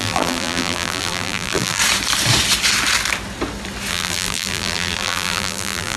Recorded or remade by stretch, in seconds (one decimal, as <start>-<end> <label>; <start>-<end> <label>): 0.0-1.8 remade; 1.8-3.9 recorded; 3.9-6.0 remade